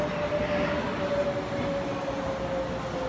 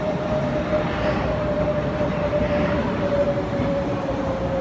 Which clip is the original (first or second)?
first